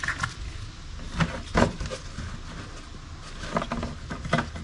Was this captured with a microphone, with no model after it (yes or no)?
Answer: yes